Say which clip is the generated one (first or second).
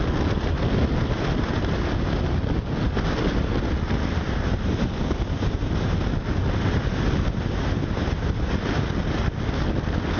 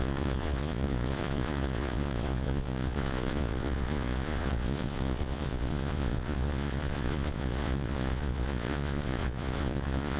second